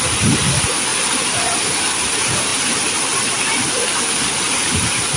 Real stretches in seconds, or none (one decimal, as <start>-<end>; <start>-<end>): 0.0-5.2